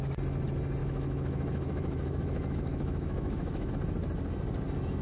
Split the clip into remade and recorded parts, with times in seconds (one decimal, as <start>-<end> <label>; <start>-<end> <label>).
0.0-0.8 recorded; 0.8-3.7 remade; 3.7-5.0 recorded

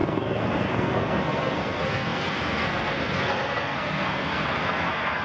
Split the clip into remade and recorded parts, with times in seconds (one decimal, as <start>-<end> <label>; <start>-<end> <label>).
0.0-5.2 remade

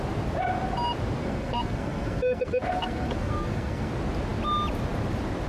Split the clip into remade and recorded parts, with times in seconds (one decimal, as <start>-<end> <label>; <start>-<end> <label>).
0.0-1.2 recorded; 1.2-3.9 remade; 3.9-5.5 recorded

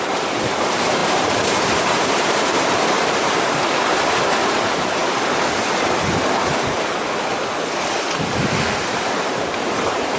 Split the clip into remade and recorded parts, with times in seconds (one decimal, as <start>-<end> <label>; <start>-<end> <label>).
0.0-5.0 remade; 5.0-8.9 recorded; 8.9-10.2 remade

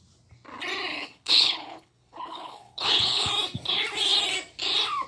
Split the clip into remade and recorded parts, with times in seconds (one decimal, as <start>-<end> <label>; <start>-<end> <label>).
0.0-0.9 recorded; 0.9-3.3 remade; 3.3-5.1 recorded